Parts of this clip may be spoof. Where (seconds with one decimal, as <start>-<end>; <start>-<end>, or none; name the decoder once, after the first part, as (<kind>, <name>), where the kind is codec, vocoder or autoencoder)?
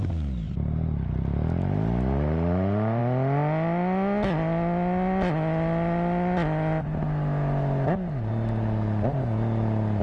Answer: none